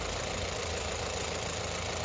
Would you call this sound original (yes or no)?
yes